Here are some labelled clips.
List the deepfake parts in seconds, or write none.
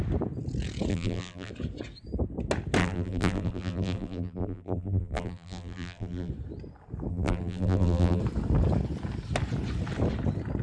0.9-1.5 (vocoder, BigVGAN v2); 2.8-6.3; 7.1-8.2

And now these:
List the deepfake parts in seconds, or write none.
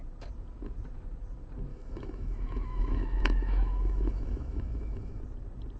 1.7-5.2 (autoencoder, DAC-VAE)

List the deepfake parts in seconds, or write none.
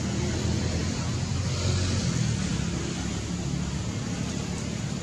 none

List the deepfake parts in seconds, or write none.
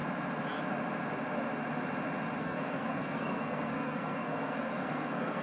2.4-5.4 (codec, SNAC)